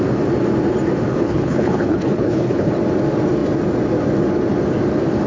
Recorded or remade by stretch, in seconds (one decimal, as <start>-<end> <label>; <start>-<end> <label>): 0.0-1.1 recorded; 1.1-2.7 remade; 2.7-5.3 recorded